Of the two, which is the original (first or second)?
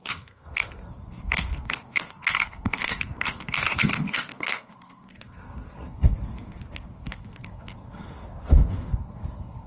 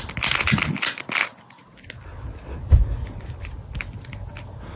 second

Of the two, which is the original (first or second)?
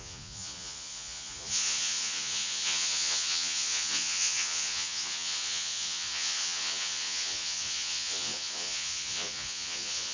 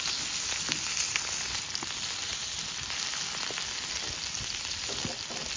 second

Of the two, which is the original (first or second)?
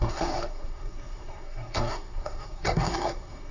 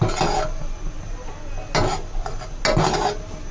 second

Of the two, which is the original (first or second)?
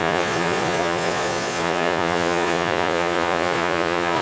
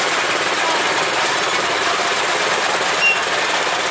second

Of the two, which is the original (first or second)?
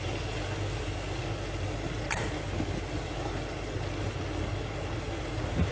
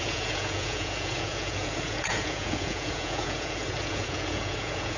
first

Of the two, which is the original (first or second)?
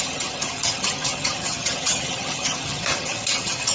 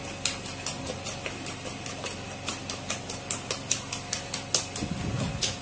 second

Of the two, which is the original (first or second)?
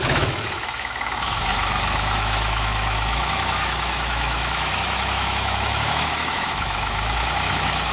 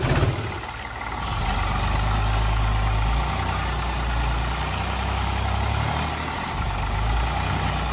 second